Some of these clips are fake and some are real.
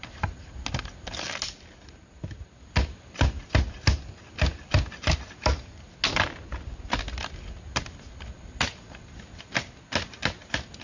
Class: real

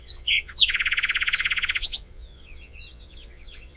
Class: fake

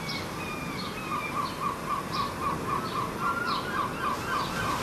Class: real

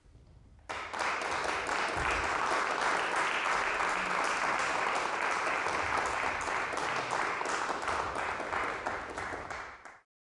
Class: real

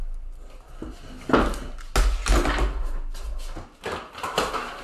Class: real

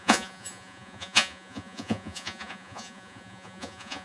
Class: fake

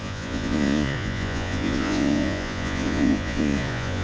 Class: fake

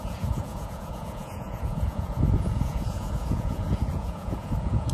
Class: fake